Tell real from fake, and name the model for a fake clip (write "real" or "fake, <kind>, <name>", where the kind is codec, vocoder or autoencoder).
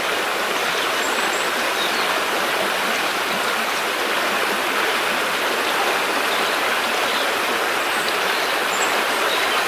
real